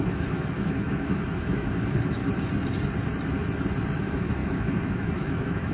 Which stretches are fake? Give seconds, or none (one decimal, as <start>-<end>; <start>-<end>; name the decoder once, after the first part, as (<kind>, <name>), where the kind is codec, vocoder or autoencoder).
0.0-2.2 (autoencoder, DAC-VAE); 4.0-5.7